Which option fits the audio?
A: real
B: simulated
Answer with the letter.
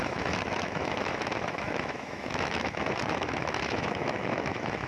B